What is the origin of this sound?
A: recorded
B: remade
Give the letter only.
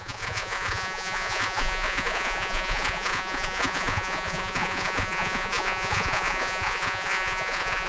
B